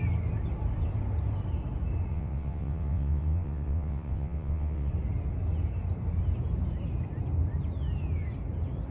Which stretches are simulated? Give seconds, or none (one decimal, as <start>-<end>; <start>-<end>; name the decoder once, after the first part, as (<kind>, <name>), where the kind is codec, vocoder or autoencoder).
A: 2.1-4.9 (vocoder, WaveNeXt)